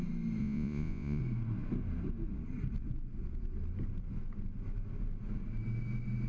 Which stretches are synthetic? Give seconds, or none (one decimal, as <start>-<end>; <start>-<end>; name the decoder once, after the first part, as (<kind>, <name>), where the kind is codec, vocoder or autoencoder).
0.4-1.2 (vocoder, Vocos)